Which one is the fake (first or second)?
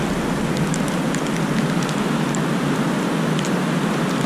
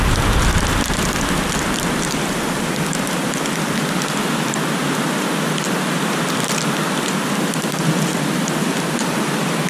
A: second